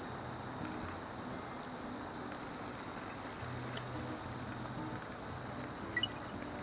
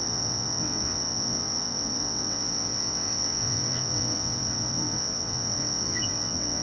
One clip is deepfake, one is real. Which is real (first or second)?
first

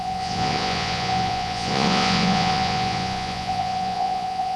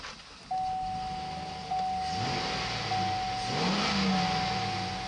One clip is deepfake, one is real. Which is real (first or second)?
second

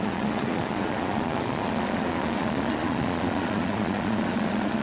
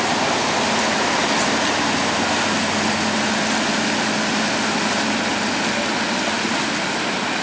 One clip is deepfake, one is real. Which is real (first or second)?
second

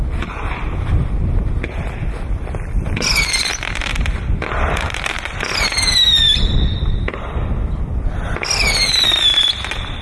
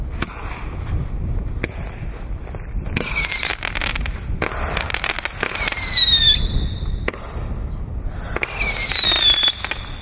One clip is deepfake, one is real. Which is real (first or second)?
second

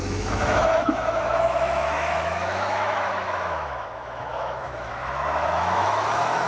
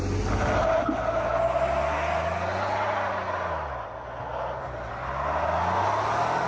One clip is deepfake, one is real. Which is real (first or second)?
second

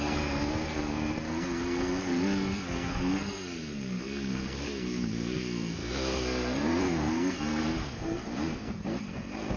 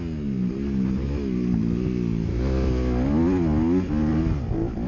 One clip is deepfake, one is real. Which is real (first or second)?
second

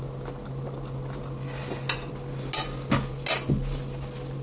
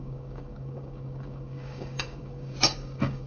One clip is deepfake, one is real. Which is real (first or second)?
first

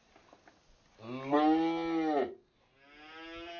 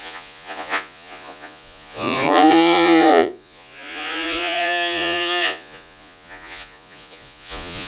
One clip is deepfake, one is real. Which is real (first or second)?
first